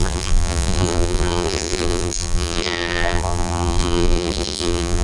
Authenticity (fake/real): fake